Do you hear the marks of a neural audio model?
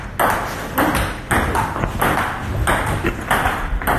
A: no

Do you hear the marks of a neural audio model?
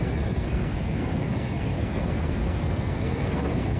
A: yes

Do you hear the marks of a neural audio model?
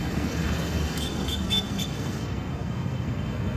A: yes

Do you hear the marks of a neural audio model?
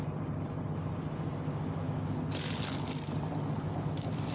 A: no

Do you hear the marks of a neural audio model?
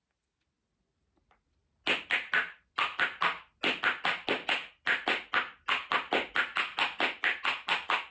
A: no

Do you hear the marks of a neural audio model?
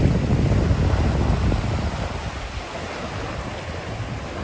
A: no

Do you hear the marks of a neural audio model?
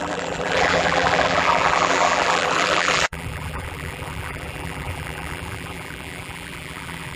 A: yes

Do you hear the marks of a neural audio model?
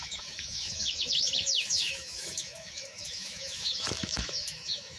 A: yes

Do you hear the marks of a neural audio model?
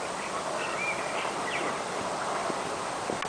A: no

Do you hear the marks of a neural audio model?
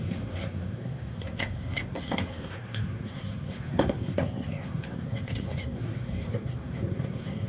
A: yes